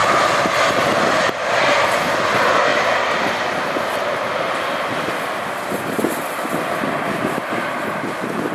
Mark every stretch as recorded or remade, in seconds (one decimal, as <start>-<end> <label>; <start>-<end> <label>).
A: 0.0-8.5 recorded